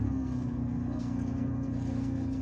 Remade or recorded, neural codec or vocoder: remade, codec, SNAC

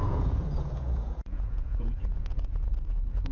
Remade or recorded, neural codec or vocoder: remade, vocoder, Vocos